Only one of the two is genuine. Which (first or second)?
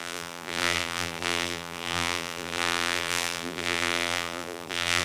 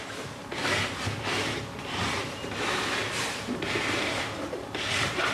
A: second